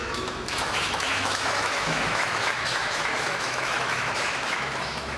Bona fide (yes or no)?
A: no